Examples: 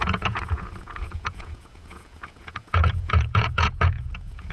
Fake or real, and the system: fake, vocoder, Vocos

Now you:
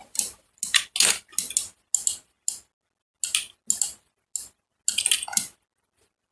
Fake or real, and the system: real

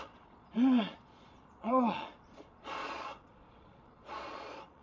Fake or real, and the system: fake, vocoder, Vocos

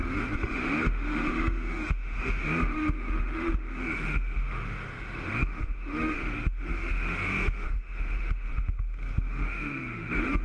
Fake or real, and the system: fake, autoencoder, DAC-VAE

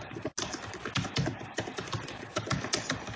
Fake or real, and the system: real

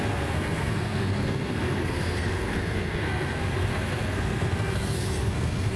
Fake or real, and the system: fake, codec, SNAC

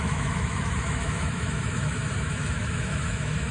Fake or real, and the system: fake, autoencoder, DAC-VAE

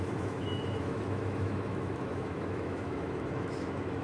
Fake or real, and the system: fake, autoencoder, DAC-VAE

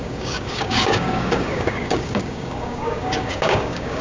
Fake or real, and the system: fake, codec, DAC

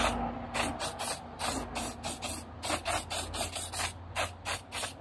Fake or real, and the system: real